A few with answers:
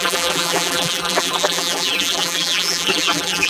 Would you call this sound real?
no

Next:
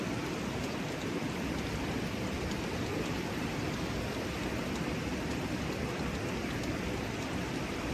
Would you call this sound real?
no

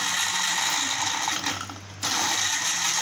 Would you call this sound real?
yes